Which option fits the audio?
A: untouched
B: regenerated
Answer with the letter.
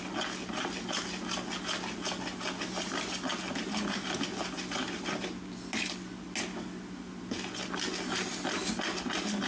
A